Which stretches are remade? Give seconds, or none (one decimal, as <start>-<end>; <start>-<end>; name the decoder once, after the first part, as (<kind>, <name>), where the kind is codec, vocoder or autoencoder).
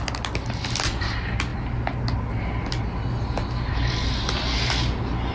none